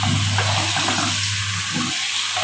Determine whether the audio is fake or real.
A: real